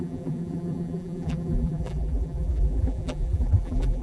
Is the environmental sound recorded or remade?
remade